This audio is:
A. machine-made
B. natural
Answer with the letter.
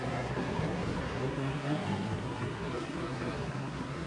A